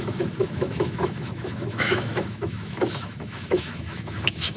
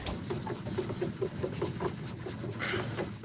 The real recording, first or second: second